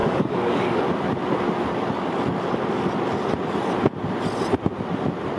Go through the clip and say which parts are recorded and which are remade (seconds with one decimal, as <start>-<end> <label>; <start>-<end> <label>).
0.0-0.8 remade; 0.8-5.4 recorded